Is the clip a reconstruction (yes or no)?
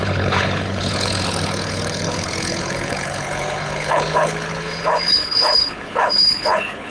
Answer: yes